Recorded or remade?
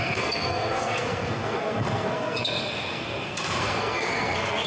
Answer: remade